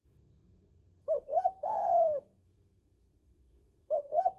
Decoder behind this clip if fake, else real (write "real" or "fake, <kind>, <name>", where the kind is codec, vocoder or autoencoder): fake, autoencoder, DAC-VAE